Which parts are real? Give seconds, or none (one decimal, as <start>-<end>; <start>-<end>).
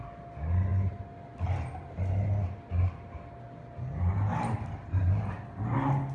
0.0-6.1